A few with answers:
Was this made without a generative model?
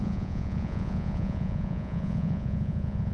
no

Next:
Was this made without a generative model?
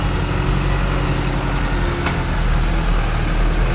yes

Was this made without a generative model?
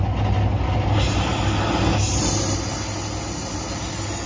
yes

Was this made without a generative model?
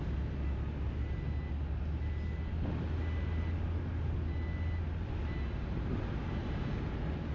yes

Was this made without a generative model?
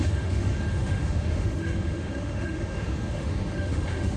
no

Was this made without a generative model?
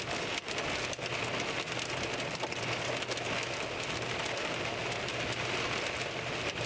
yes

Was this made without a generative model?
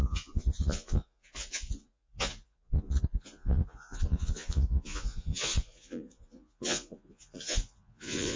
no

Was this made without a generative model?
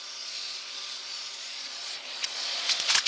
no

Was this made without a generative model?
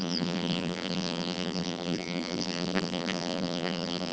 no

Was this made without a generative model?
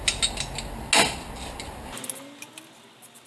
yes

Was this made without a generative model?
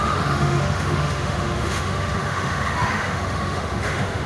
no